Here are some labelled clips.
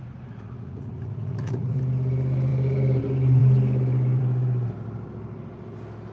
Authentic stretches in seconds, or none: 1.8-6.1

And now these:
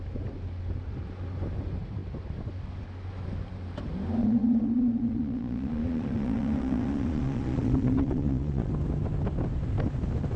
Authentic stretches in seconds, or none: 0.0-4.2; 8.7-10.4

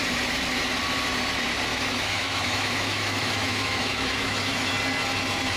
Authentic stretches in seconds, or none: 0.0-1.7; 4.7-5.6

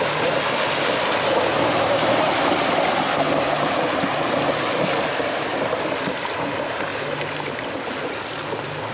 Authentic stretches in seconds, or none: 0.0-8.9

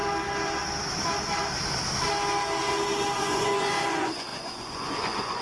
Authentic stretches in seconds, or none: 0.0-3.2

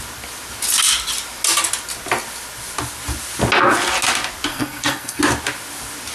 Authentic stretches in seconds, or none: 0.0-4.5; 5.2-6.1

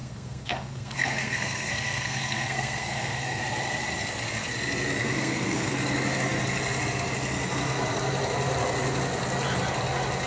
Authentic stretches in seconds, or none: 3.4-5.0; 5.7-10.3